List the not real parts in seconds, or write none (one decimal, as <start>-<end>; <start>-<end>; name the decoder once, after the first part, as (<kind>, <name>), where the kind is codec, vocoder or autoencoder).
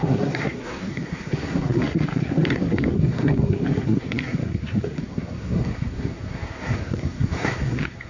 0.0-8.1 (codec, SNAC)